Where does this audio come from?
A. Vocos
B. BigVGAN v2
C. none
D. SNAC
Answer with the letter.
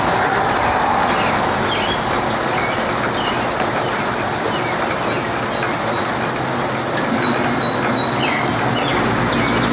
C